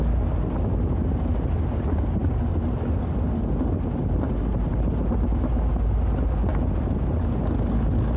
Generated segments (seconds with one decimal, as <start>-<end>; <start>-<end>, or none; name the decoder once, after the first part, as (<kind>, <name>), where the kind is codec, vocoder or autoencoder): none